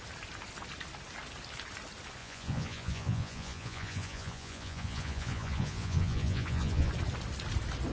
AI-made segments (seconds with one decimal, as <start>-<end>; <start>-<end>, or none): 2.2-6.9